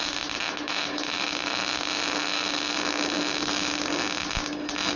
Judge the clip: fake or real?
real